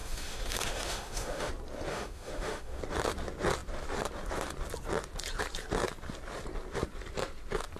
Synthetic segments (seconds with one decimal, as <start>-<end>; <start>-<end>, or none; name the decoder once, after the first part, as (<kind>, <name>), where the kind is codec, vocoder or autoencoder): 0.0-1.5 (autoencoder, DAC-VAE); 1.9-2.8